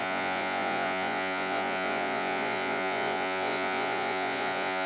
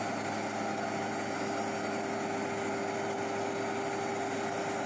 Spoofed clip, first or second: first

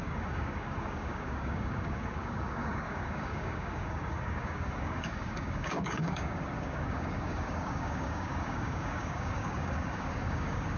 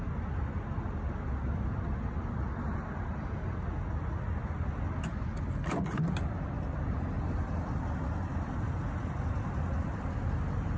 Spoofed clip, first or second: first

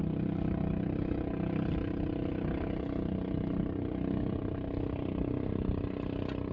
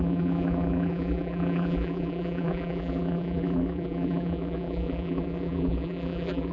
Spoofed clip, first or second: second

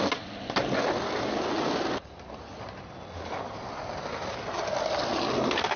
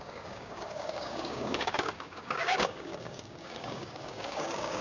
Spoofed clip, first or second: second